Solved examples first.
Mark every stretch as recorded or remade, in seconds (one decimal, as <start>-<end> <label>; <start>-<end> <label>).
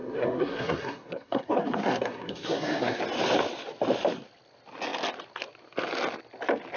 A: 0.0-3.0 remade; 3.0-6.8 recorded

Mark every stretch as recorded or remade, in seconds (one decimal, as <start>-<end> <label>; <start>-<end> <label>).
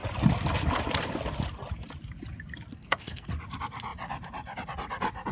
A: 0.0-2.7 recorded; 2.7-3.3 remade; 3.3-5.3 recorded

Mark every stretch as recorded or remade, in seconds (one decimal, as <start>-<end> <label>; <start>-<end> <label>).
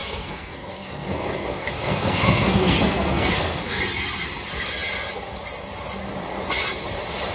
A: 0.0-3.8 remade; 3.8-7.3 recorded